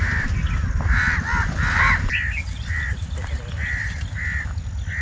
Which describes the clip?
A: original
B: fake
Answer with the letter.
A